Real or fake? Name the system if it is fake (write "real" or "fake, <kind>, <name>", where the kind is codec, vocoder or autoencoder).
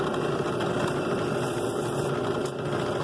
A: real